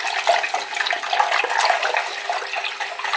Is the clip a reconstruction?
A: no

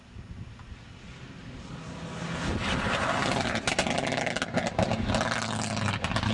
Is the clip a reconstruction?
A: no